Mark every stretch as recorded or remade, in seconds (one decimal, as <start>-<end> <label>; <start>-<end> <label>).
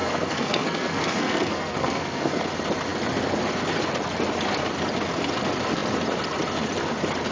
0.0-2.4 remade; 2.4-7.3 recorded